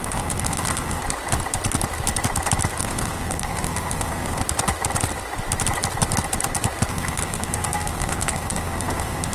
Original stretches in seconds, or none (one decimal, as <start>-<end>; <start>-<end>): 1.0-2.8; 4.4-6.9